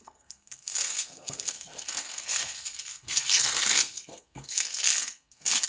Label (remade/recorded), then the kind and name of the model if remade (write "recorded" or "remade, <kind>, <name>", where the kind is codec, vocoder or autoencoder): remade, codec, SNAC